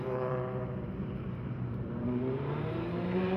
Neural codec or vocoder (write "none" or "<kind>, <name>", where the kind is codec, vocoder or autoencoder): vocoder, BigVGAN v2